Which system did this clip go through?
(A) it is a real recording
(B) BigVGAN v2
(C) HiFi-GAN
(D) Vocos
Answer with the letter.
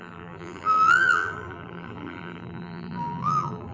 B